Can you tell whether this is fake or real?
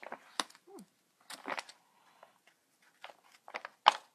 real